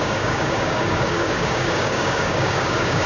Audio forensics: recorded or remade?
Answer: remade